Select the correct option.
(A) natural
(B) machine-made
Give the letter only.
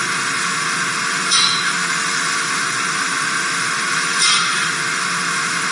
A